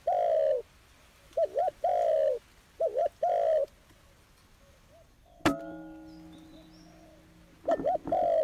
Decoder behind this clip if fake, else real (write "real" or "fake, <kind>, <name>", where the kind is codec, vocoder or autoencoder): real